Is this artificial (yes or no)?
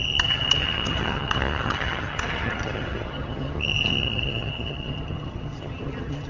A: yes